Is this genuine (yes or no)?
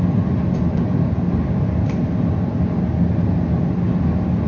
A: yes